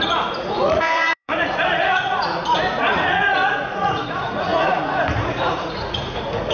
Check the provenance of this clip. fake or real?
fake